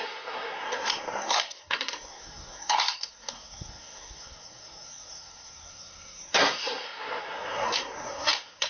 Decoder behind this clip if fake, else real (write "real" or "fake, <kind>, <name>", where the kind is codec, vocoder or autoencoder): fake, codec, SNAC